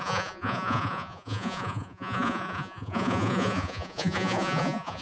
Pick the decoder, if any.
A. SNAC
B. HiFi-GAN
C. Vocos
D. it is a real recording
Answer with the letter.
C